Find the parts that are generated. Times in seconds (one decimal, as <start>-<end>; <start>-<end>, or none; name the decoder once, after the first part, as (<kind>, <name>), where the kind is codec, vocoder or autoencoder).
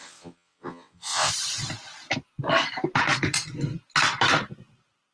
0.0-1.3 (vocoder, WaveNeXt)